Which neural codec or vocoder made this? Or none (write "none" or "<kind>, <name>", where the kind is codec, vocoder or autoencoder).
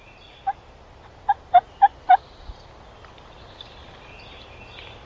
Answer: none